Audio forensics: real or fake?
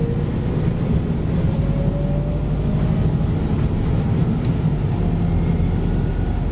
real